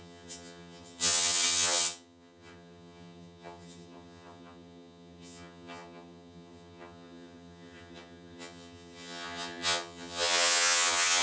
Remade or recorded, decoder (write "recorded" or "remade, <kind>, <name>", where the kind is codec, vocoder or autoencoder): remade, vocoder, HiFi-GAN